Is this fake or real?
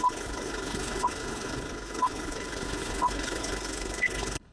fake